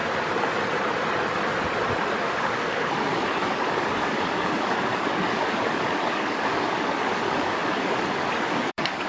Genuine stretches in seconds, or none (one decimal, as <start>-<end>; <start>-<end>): 0.0-2.2